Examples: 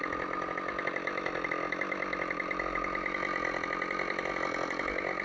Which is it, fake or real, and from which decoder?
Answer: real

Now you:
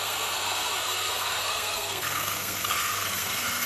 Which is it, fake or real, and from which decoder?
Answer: fake, codec, SNAC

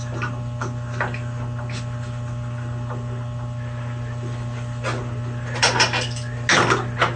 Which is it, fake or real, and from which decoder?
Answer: real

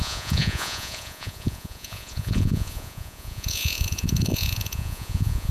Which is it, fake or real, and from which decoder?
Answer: fake, vocoder, Vocos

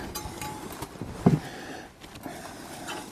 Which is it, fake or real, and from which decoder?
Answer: real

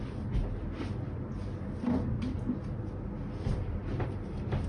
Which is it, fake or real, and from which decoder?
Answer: real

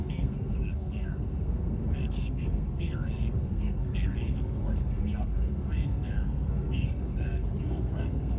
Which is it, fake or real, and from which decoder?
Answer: fake, codec, SNAC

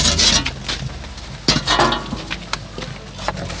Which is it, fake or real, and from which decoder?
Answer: real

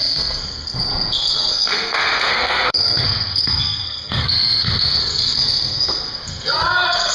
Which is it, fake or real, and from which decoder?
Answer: fake, codec, SNAC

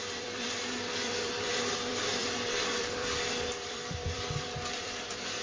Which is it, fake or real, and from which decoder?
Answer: fake, vocoder, BigVGAN v2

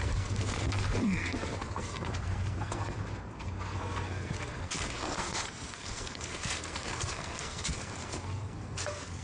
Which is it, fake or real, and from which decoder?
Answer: fake, codec, SNAC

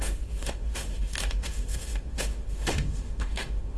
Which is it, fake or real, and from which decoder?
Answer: fake, autoencoder, DAC-VAE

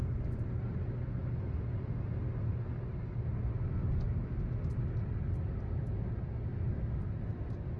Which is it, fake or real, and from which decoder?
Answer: real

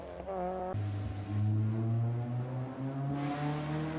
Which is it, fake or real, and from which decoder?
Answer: real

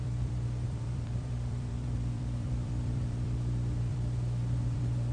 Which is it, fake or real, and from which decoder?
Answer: fake, vocoder, BigVGAN v2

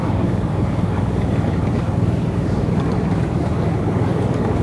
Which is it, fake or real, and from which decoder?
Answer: fake, codec, DAC